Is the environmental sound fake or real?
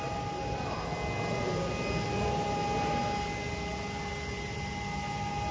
real